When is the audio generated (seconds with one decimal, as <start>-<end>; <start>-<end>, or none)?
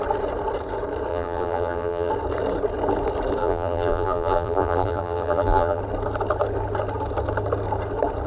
1.1-2.1; 3.4-5.8